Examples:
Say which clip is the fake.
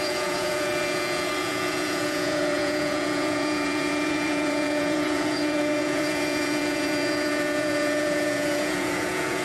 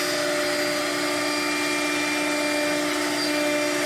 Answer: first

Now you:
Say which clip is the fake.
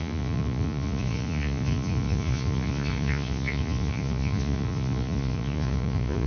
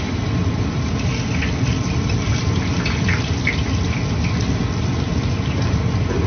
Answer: first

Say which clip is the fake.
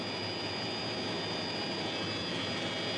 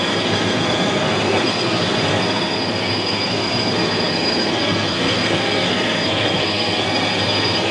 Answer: second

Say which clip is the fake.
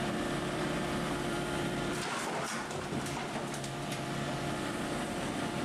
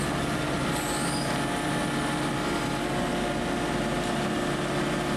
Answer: first